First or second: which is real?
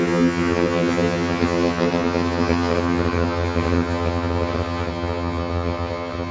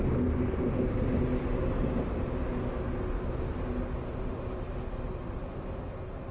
second